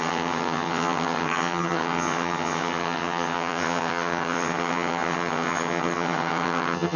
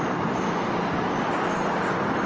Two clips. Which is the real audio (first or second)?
second